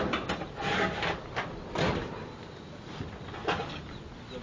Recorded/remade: recorded